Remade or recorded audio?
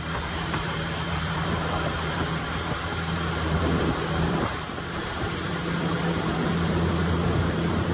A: remade